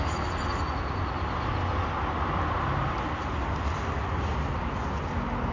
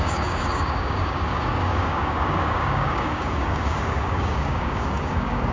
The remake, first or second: second